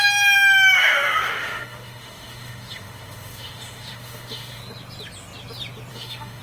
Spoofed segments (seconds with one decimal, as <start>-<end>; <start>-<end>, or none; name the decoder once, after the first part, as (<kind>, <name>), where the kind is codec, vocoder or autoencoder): 0.8-4.6 (autoencoder, DAC-VAE); 5.9-6.4